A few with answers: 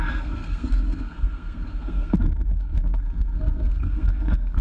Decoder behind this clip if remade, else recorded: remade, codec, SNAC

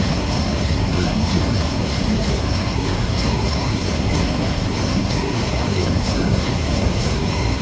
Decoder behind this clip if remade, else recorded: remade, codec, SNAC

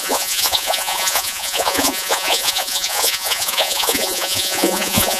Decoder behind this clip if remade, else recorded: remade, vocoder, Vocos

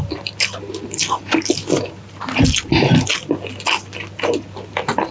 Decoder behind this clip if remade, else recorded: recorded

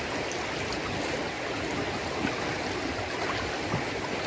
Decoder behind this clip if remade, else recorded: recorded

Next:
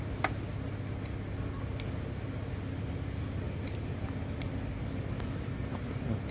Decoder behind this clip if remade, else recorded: recorded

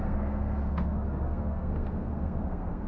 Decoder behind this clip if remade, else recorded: remade, codec, SNAC